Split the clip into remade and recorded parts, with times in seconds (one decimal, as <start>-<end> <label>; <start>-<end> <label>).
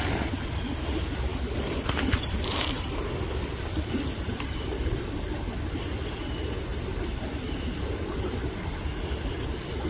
0.0-1.3 recorded; 1.3-4.9 remade; 4.9-6.7 recorded; 6.7-9.9 remade